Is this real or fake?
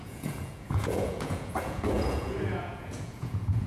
fake